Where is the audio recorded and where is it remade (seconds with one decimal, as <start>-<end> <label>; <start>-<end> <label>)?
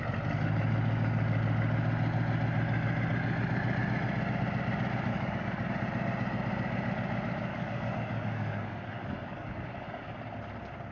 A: 0.0-5.1 recorded; 5.1-5.7 remade; 5.7-7.5 recorded; 7.5-10.2 remade; 10.2-10.9 recorded